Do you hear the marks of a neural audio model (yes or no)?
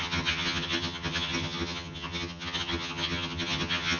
yes